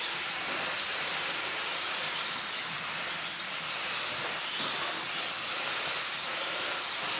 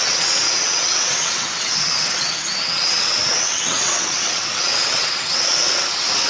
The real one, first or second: first